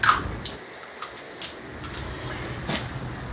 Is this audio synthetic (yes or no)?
no